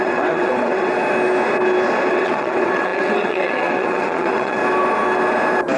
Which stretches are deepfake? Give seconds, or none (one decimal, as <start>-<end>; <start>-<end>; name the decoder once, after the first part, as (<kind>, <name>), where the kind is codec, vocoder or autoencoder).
0.0-0.9 (vocoder, WaveNeXt); 2.1-4.6